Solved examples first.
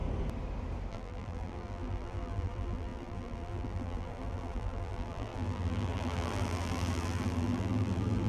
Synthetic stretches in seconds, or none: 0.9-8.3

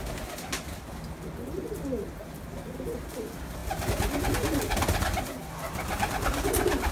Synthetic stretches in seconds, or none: none

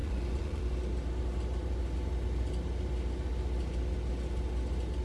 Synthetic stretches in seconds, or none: 0.0-0.6

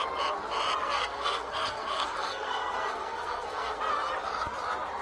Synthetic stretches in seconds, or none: 0.8-3.8

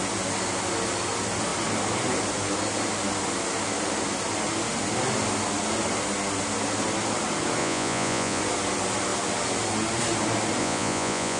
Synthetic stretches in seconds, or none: 7.6-8.4; 10.6-11.4